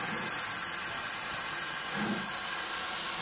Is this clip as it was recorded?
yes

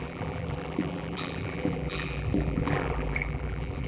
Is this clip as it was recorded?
no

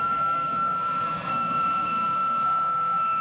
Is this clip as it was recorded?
no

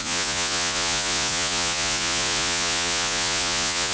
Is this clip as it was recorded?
no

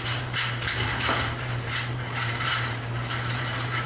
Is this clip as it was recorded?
no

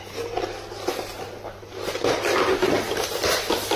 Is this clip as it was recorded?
yes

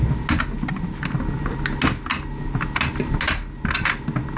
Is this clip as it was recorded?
yes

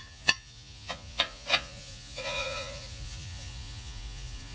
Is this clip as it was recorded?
no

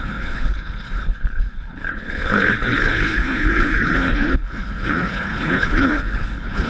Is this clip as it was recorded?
no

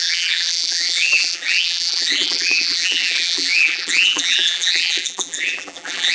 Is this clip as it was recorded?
no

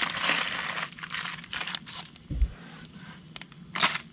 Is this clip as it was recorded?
yes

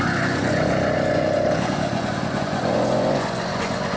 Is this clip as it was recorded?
no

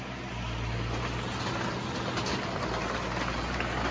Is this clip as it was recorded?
yes